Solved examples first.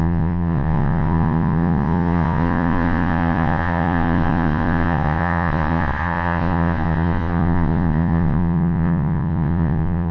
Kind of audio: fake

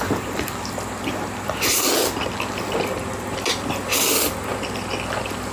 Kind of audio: real